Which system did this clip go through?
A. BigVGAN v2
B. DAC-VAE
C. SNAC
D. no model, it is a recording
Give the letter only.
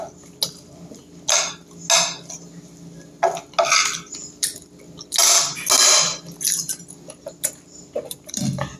D